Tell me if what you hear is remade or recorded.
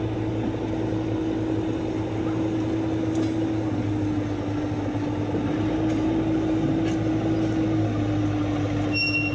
recorded